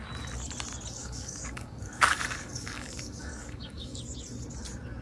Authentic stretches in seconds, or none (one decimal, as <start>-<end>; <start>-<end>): 0.0-1.0; 4.0-5.0